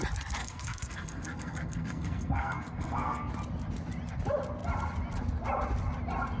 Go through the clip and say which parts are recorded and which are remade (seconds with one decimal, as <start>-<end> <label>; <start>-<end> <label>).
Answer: 0.0-0.4 recorded; 0.4-3.3 remade; 3.3-6.4 recorded